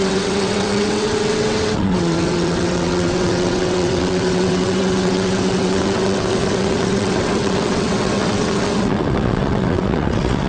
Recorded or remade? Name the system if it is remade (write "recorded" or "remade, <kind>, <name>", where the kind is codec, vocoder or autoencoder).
remade, vocoder, WaveNeXt